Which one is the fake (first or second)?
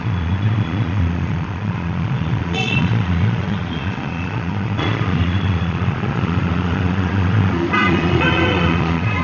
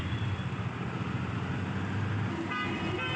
first